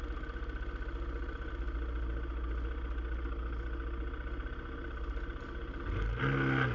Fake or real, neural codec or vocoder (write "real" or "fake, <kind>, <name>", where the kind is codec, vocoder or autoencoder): real